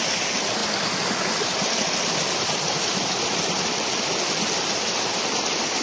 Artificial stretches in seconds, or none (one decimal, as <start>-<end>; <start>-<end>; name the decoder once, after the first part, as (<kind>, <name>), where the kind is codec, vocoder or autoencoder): 0.6-4.1 (vocoder, BigVGAN v2)